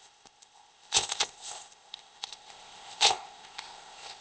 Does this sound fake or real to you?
fake